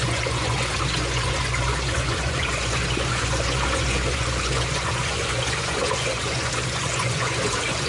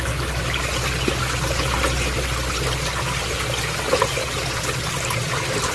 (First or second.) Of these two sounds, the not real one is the first